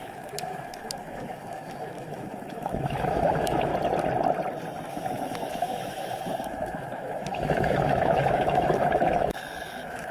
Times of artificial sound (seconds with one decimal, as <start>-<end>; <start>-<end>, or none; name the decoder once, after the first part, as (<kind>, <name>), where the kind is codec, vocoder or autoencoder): 0.0-3.7 (autoencoder, DAC-VAE); 4.9-10.1

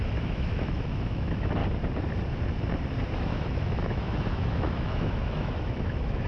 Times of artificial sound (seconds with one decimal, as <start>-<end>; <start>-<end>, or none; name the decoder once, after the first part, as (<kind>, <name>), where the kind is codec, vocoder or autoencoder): 0.0-1.6 (autoencoder, DAC-VAE); 3.2-6.3

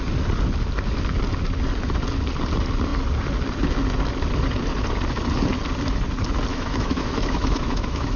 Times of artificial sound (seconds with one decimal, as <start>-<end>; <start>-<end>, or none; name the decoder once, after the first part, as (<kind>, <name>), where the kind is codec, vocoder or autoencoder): 6.5-8.2 (autoencoder, DAC-VAE)

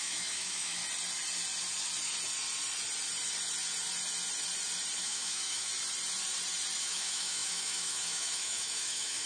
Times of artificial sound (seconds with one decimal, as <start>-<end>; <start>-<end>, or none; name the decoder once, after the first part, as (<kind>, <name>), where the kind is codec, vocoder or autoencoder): 0.0-0.8 (autoencoder, DAC-VAE); 5.0-5.7; 6.8-9.3

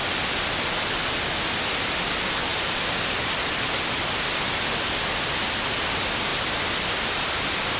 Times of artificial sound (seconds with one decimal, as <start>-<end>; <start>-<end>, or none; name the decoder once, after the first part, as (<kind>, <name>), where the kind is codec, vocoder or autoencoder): none

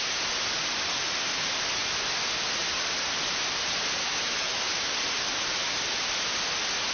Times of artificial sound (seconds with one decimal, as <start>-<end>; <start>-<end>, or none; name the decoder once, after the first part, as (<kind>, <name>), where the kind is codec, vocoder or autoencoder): 4.0-4.9 (autoencoder, DAC-VAE)

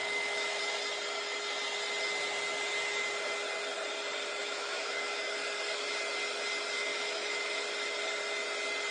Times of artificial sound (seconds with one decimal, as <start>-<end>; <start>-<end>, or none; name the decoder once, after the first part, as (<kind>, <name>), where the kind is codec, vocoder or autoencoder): 0.0-0.6 (autoencoder, DAC-VAE); 4.4-5.2; 6.9-7.5

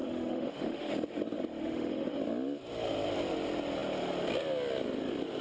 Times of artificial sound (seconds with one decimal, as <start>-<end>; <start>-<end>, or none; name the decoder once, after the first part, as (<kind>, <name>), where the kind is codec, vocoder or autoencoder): 0.0-0.9 (autoencoder, DAC-VAE); 1.6-2.2